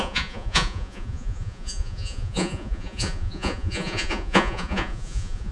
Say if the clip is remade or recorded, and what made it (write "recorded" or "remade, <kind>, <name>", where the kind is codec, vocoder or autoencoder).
remade, vocoder, Vocos